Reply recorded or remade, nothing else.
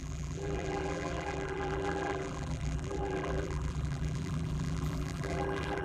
remade